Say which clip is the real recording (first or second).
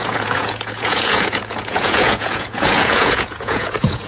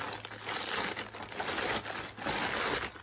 second